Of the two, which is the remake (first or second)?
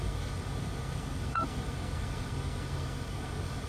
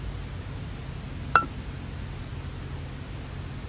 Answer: first